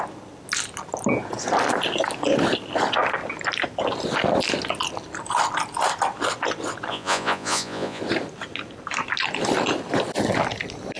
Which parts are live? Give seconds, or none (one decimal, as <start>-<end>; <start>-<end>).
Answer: 0.0-6.9; 8.0-11.0